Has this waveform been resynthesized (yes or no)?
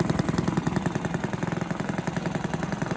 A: no